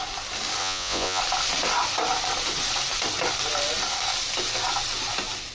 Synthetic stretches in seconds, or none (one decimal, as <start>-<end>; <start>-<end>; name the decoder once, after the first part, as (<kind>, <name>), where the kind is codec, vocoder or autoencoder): 0.6-1.2 (vocoder, Vocos)